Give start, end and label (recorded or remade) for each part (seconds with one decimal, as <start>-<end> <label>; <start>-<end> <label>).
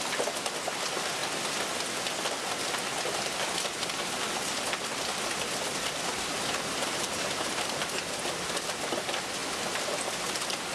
0.0-10.7 recorded